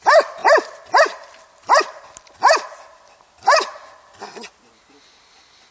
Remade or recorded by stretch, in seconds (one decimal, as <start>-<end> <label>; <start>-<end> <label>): 0.0-5.7 recorded